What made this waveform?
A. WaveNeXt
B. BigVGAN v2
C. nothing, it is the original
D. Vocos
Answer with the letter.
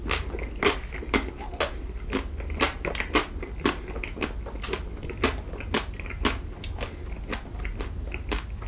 C